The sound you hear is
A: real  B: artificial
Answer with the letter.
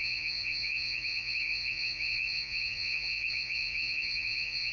B